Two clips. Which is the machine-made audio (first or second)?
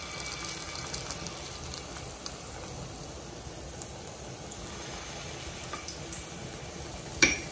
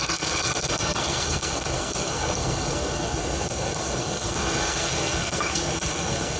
second